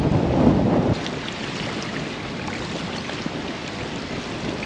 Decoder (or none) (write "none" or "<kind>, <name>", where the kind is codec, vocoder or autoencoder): none